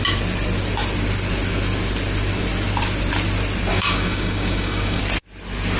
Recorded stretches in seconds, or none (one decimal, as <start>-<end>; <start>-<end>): 0.0-3.7; 5.0-5.8